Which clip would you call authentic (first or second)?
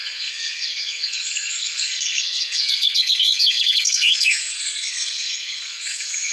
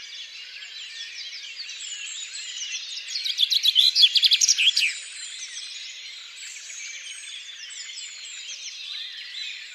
second